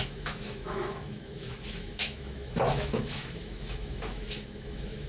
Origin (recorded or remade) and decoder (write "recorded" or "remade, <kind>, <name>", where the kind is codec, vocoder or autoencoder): remade, autoencoder, DAC-VAE